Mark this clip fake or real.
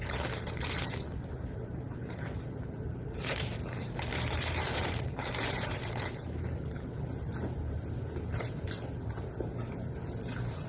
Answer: fake